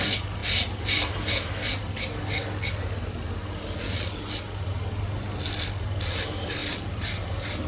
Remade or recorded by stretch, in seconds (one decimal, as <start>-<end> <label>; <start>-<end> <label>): 0.0-6.6 recorded; 6.6-7.2 remade; 7.2-7.7 recorded